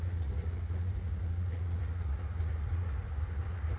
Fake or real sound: fake